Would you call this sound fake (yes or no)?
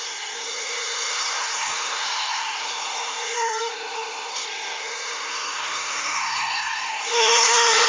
yes